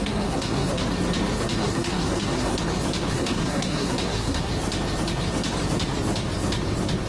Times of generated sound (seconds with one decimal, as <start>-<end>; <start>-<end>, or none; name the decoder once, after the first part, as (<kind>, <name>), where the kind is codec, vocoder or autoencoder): 0.0-0.7 (codec, SNAC); 1.5-2.5; 3.1-4.5